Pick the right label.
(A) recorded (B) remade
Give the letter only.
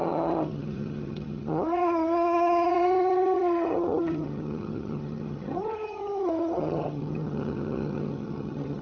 B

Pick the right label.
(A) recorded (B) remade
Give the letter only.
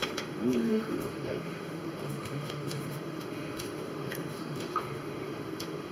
B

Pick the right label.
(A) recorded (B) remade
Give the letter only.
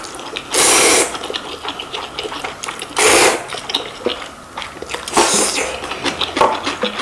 A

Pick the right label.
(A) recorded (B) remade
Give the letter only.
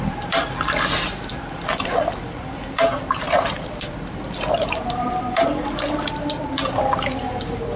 B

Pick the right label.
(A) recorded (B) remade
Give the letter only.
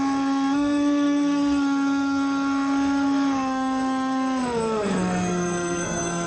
B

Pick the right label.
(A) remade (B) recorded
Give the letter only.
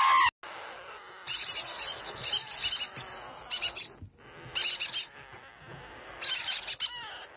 B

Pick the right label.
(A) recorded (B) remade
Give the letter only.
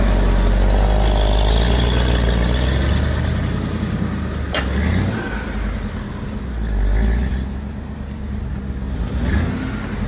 A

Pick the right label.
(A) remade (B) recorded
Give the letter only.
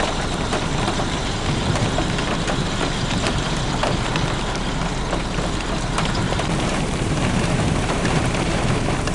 A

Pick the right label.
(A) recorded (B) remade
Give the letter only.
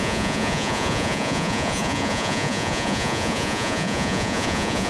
B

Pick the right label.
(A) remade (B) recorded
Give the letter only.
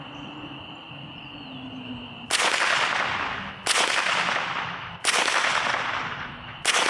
B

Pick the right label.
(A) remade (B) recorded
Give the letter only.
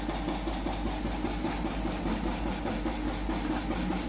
B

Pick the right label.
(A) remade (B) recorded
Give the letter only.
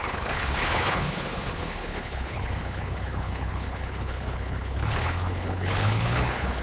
A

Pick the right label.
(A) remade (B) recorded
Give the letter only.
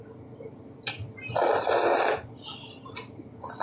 B